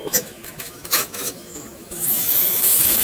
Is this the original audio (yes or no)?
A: no